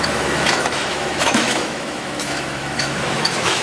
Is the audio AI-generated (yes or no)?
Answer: yes